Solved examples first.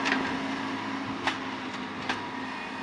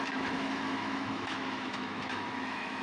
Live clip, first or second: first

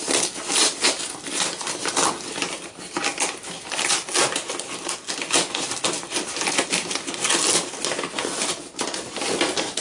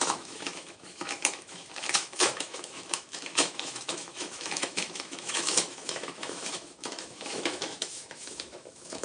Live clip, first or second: first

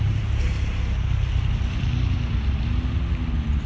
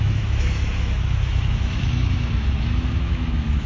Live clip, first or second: first